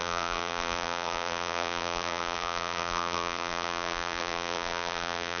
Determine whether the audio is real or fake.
fake